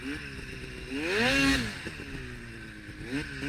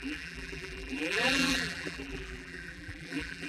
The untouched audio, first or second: first